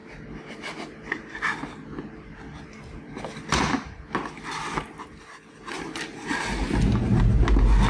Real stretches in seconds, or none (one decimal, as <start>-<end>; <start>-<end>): 0.0-7.9